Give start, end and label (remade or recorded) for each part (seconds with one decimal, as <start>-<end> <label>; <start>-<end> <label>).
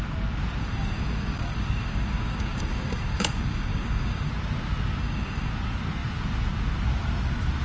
0.0-0.6 recorded; 0.6-4.3 remade; 4.3-5.0 recorded; 5.0-5.5 remade; 5.5-7.6 recorded